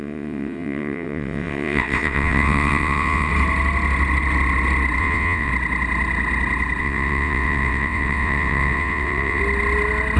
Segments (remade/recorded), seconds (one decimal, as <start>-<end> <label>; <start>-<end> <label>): 0.0-3.3 remade; 3.3-5.0 recorded; 5.0-5.5 remade; 5.5-6.8 recorded; 6.8-9.4 remade; 9.4-10.2 recorded